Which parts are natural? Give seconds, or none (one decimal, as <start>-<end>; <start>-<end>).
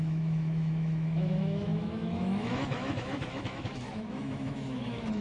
none